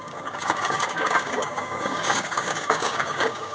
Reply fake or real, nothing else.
fake